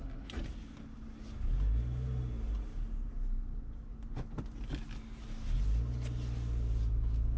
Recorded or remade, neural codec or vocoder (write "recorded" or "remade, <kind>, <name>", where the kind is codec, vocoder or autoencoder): recorded